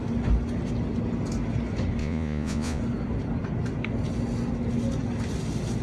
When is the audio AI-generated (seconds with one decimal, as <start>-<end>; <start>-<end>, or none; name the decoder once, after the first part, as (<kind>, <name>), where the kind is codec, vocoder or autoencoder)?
2.0-2.8 (vocoder, Vocos)